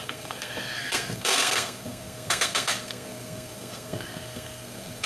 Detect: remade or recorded remade